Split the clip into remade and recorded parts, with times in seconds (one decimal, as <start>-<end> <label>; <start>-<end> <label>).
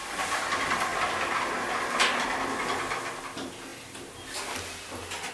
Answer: 0.0-5.3 recorded